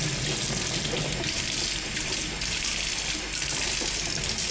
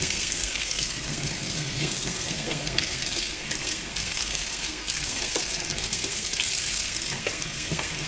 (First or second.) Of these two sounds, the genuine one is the first